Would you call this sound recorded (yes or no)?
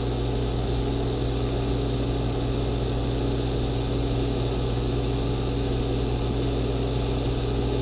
yes